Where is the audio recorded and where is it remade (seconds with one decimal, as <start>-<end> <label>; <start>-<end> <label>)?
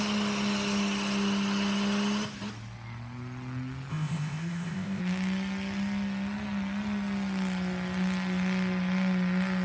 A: 0.0-3.9 recorded; 3.9-5.0 remade; 5.0-9.6 recorded